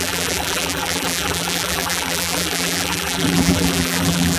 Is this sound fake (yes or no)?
yes